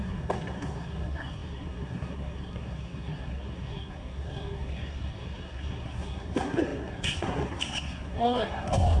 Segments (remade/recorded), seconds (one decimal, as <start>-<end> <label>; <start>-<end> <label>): 0.0-9.0 remade